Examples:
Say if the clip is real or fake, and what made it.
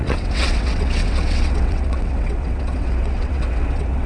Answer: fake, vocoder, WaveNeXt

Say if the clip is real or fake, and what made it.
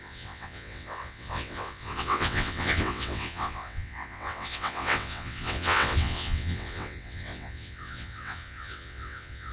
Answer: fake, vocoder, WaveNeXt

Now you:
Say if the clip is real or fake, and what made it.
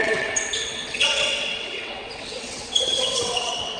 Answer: fake, vocoder, WaveNeXt